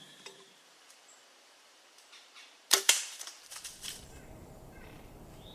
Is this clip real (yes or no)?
no